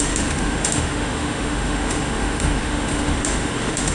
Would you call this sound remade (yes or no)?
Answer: yes